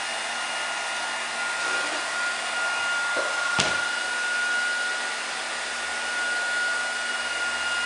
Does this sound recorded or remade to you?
recorded